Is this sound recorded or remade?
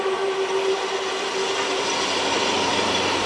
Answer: recorded